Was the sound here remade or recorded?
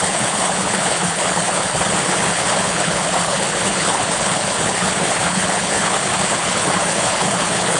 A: remade